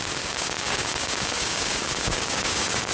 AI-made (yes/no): yes